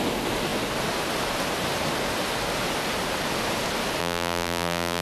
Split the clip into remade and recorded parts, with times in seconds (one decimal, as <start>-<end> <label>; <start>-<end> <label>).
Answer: 0.0-4.0 recorded; 4.0-5.0 remade